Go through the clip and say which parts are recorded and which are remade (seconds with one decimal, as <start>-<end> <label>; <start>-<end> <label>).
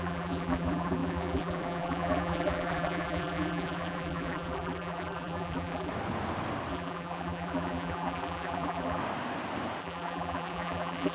0.0-5.9 remade; 5.9-6.7 recorded; 6.7-9.0 remade; 9.0-9.8 recorded; 9.8-11.1 remade